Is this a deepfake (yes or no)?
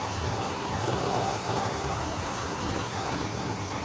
yes